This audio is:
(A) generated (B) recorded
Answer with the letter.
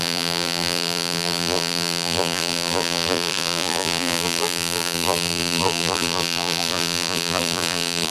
A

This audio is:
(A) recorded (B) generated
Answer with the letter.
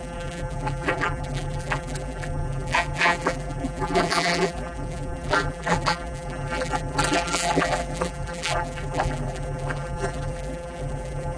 B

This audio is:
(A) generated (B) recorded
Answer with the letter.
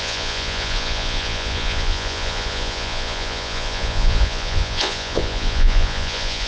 A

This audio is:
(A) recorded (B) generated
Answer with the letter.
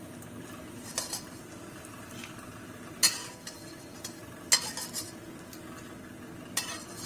A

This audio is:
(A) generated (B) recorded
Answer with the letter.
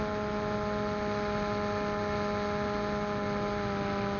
B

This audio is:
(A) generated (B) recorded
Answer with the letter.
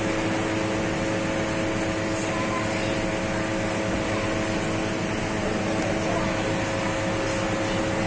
B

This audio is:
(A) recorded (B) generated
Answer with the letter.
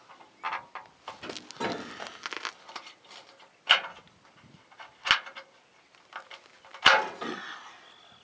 A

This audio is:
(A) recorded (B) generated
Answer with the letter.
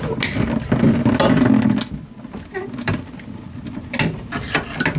A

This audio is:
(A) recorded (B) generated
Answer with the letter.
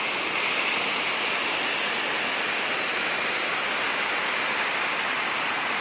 A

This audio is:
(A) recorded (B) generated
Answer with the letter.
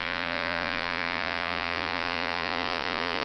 B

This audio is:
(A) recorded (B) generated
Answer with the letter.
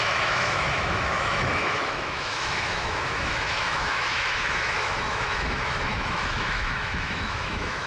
B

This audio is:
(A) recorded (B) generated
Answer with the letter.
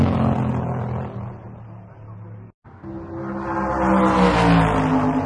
A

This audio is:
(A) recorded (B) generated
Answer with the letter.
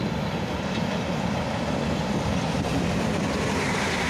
B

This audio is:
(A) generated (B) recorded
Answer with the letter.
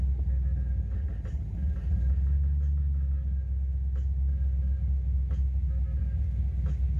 B